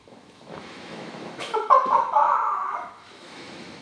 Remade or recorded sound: remade